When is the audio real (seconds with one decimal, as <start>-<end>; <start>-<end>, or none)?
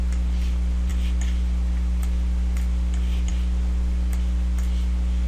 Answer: 0.0-5.3